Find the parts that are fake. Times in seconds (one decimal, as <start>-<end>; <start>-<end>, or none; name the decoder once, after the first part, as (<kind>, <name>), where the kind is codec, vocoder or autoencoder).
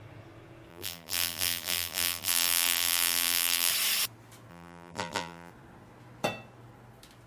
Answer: 0.7-3.7 (vocoder, BigVGAN v2); 4.5-5.5